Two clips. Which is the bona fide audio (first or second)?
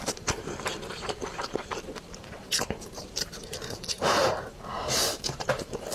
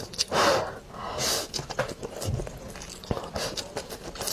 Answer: second